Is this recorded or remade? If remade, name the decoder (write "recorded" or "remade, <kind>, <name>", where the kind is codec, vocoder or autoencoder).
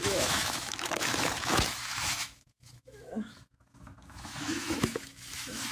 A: remade, autoencoder, DAC-VAE